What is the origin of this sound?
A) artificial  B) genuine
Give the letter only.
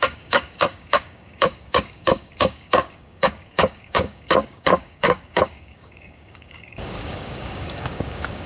A